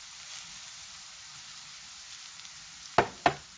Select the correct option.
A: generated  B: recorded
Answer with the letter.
B